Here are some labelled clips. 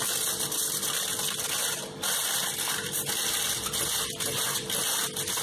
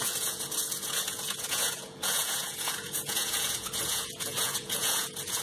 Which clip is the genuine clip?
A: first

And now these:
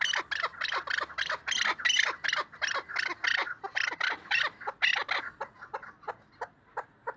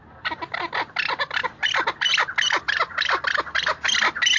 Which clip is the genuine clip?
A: first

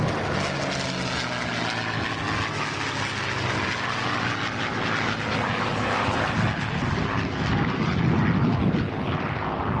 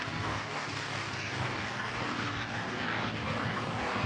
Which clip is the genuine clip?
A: first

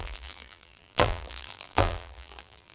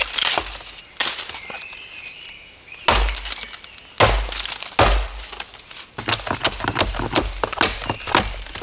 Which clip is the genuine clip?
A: second